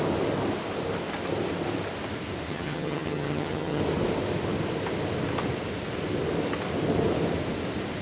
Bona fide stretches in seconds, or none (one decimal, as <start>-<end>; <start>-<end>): 0.0-2.5; 3.8-8.0